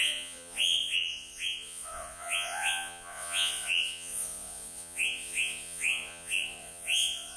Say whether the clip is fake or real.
fake